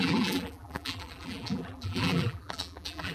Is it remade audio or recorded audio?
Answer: remade